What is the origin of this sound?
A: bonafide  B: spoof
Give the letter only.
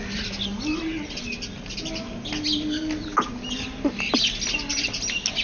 A